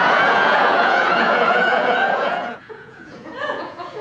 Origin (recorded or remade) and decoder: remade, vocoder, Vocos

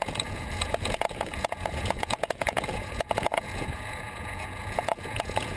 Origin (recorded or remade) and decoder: remade, vocoder, Vocos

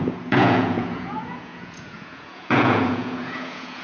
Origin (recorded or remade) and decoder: remade, vocoder, Vocos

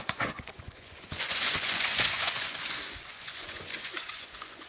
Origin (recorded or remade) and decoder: remade, vocoder, Vocos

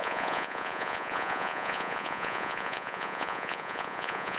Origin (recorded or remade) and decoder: remade, vocoder, Vocos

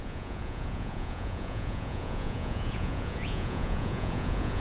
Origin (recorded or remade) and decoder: remade, vocoder, Vocos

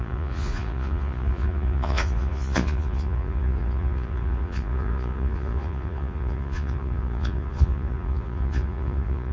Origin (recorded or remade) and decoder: remade, vocoder, Vocos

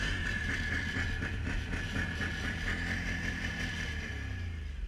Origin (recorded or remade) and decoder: recorded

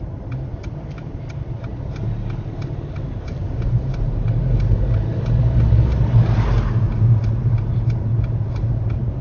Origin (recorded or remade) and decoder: recorded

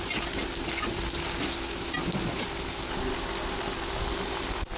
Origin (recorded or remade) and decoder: recorded